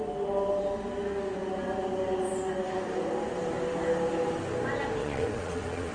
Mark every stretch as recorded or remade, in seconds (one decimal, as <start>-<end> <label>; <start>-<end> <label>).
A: 0.0-5.0 recorded; 5.0-5.9 remade